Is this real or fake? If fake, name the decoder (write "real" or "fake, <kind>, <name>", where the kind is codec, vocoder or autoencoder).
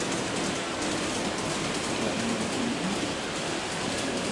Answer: real